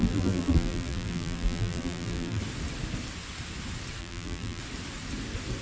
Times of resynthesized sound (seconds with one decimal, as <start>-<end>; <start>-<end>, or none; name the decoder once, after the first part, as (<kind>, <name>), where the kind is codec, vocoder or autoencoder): 0.0-2.4 (vocoder, BigVGAN v2); 4.0-4.6